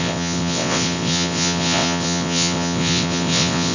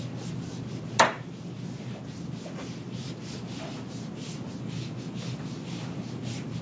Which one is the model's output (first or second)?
first